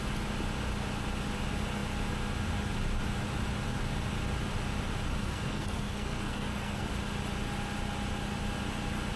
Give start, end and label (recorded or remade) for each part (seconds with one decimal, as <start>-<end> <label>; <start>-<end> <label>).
0.0-5.2 recorded; 5.2-6.9 remade; 6.9-9.2 recorded